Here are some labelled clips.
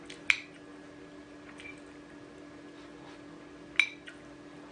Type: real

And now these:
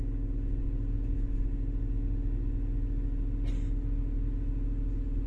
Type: real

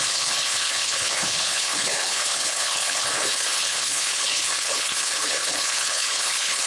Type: fake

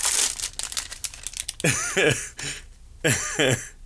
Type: real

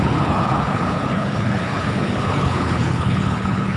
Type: fake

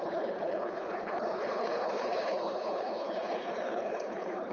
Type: fake